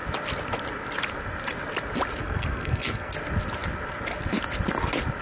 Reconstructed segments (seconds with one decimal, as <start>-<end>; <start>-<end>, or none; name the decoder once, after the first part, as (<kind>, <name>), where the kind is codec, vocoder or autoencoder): 2.2-3.1 (codec, SNAC)